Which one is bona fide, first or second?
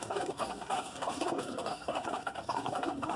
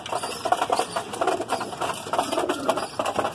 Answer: second